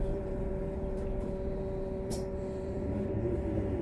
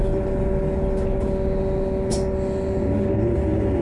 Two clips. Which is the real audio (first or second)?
second